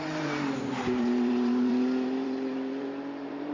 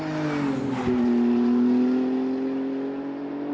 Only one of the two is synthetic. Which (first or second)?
first